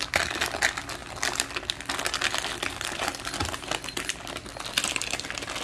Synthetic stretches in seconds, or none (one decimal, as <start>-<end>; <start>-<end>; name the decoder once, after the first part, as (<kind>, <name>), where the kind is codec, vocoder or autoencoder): none